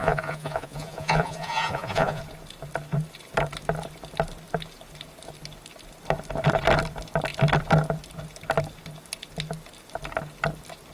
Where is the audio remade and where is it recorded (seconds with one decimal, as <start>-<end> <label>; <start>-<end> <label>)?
0.0-2.2 remade; 2.2-10.9 recorded